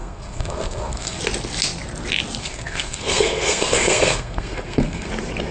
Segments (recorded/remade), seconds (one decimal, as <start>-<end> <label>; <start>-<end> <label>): 0.0-1.2 remade; 1.2-2.4 recorded; 2.4-5.1 remade; 5.1-5.5 recorded